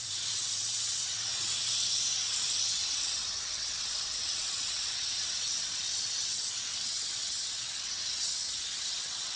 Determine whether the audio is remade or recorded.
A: remade